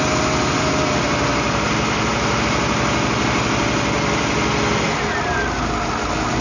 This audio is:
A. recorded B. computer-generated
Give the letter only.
A